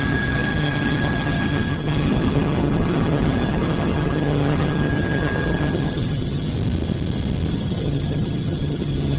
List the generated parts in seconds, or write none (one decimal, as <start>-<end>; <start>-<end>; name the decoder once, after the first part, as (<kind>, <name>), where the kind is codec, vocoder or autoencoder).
0.0-6.5 (vocoder, HiFi-GAN); 7.5-9.2